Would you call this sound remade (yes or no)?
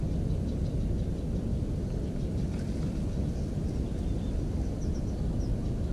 no